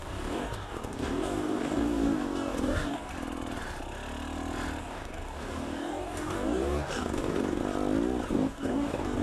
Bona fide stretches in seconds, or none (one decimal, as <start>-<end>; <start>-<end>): 3.1-4.8; 7.6-8.3